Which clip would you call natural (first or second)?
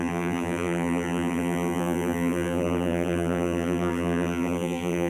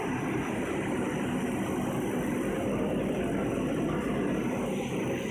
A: second